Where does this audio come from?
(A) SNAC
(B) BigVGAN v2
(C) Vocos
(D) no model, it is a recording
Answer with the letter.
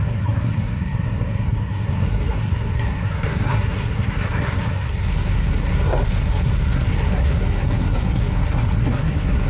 A